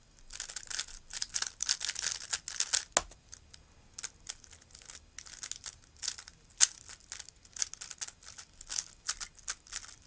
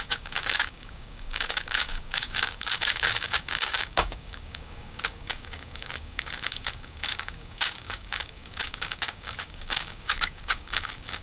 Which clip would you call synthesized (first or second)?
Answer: second